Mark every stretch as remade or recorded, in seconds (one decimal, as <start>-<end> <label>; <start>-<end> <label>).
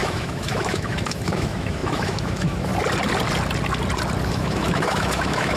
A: 0.0-2.7 remade; 2.7-4.3 recorded; 4.3-5.6 remade